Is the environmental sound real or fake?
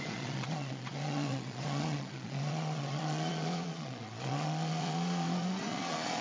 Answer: fake